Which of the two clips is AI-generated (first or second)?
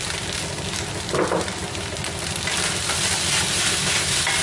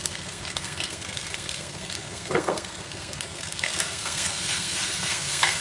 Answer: second